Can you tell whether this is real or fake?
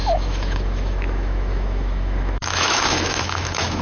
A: fake